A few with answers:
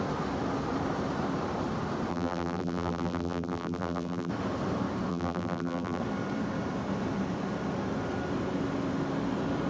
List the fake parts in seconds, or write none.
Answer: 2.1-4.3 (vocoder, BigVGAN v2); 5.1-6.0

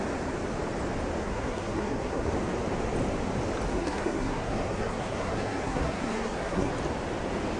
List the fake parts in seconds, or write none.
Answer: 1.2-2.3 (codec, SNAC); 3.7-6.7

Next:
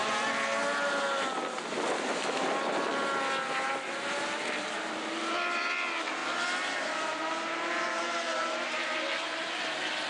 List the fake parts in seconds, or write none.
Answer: 4.2-10.1 (vocoder, BigVGAN v2)

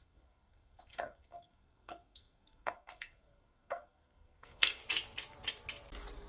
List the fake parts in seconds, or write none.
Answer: 0.0-4.8 (codec, SNAC)

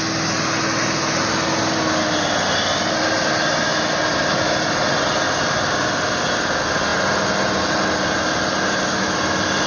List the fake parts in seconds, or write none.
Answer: none

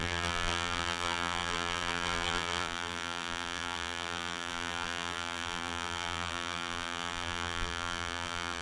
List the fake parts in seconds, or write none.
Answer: 0.0-8.6 (vocoder, BigVGAN v2)

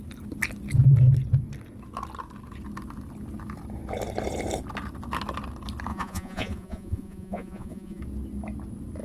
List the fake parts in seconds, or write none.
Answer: 5.9-8.0 (vocoder, Vocos)

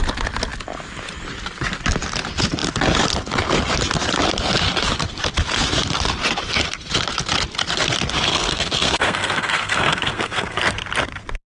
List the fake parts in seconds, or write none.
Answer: 8.3-10.6 (codec, SNAC)